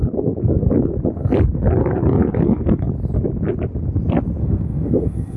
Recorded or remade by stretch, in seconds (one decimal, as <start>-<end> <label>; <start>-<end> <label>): 0.0-4.4 recorded; 4.4-5.4 remade